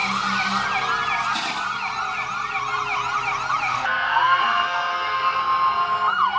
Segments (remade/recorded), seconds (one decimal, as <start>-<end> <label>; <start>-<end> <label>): 0.0-3.7 recorded; 3.7-5.4 remade; 5.4-6.4 recorded